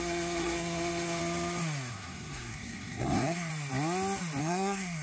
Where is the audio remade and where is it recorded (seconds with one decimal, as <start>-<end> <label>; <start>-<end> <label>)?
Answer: 0.0-1.2 remade; 1.2-1.9 recorded; 1.9-3.5 remade; 3.5-4.4 recorded; 4.4-5.0 remade

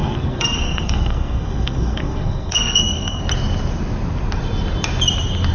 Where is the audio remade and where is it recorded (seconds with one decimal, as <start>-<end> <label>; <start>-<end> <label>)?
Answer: 0.0-3.2 remade; 3.2-5.5 recorded